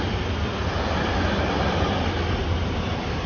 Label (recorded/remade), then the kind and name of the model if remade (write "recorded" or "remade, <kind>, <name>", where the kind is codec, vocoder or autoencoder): recorded